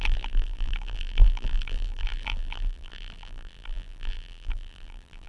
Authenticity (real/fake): fake